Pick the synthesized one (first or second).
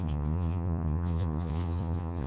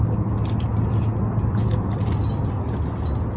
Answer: first